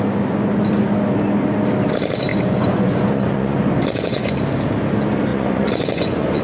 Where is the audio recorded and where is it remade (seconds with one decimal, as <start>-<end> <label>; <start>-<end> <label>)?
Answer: 0.0-2.3 recorded; 2.3-4.4 remade; 4.4-5.3 recorded; 5.3-6.4 remade